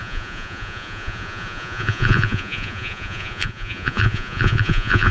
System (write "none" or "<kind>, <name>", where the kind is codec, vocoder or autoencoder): vocoder, Vocos